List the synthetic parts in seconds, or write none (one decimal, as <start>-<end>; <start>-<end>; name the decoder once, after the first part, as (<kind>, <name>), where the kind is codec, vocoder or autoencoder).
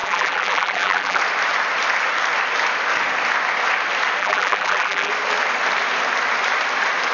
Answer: 0.0-1.2 (vocoder, BigVGAN v2); 4.2-5.1